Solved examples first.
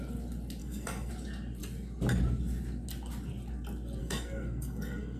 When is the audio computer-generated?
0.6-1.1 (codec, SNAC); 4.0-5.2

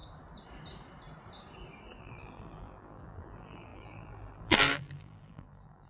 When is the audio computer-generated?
2.0-5.9 (vocoder, BigVGAN v2)